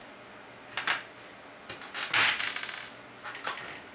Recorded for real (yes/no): yes